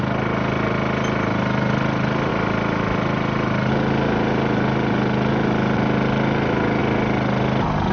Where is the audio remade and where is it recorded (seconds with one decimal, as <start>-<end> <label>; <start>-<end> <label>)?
0.0-7.9 recorded